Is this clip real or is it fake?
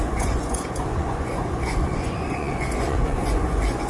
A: fake